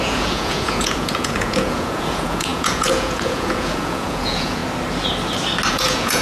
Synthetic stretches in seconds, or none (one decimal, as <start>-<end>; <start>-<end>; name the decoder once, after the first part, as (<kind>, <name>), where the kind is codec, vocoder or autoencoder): 0.0-4.6 (vocoder, Vocos); 5.7-6.2